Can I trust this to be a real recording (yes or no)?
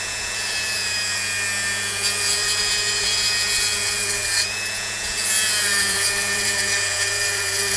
no